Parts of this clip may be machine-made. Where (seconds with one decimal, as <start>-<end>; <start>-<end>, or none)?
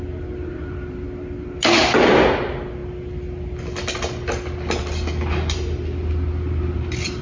none